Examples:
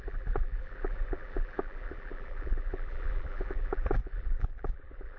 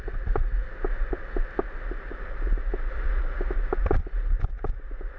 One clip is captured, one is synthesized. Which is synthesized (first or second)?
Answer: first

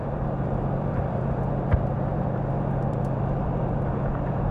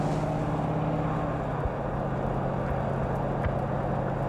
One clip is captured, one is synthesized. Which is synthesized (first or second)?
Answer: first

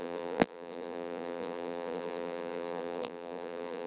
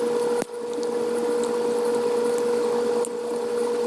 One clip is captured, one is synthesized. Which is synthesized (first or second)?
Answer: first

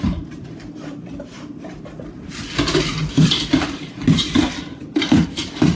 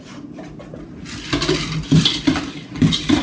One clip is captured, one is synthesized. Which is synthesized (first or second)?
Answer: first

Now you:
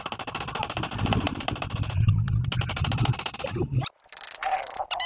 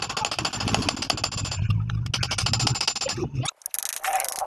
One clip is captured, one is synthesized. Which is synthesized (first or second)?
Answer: first